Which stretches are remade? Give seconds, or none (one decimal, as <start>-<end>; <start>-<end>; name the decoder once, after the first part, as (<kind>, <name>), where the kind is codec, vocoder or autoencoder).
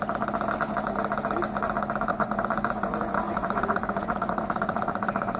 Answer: 2.1-5.4 (vocoder, Vocos)